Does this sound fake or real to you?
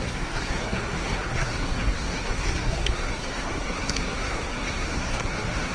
fake